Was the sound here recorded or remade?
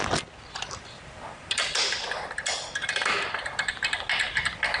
recorded